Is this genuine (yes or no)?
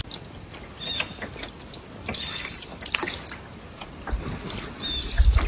yes